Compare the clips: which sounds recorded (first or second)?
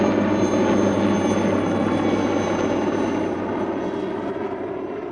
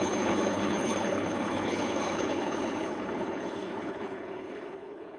first